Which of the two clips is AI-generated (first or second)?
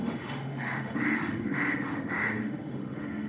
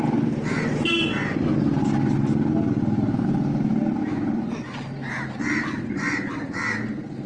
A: first